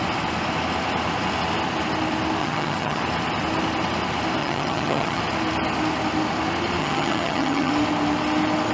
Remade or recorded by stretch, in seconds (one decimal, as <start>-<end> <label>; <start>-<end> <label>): 0.0-2.4 recorded; 2.4-3.0 remade; 3.0-4.4 recorded; 4.4-5.2 remade; 5.2-6.8 recorded; 6.8-7.7 remade; 7.7-8.7 recorded